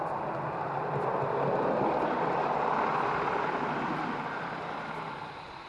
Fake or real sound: real